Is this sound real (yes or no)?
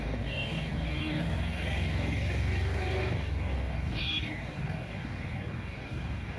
no